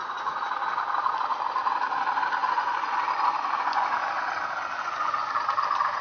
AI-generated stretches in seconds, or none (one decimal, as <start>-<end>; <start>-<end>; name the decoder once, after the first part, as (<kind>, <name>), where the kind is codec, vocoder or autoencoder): 0.0-0.5 (vocoder, Vocos); 2.4-4.1; 4.7-5.3